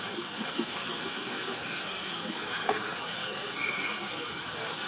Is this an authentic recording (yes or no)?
no